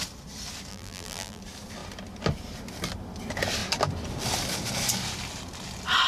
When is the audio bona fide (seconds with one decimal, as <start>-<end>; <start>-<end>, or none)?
0.0-0.7; 1.4-6.1